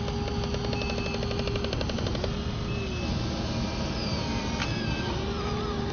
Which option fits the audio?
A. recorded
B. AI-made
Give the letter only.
A